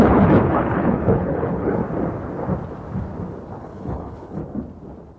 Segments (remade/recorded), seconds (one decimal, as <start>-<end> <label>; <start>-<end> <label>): 0.0-1.8 remade; 1.8-3.6 recorded; 3.6-4.4 remade; 4.4-5.2 recorded